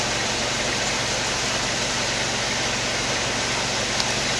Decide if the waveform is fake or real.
real